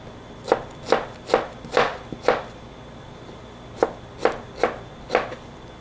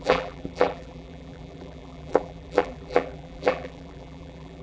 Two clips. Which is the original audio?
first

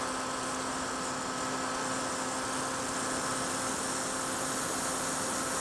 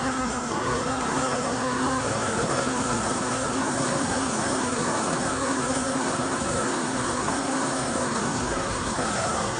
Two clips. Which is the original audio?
first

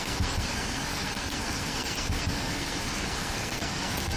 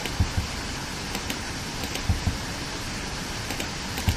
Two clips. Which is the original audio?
second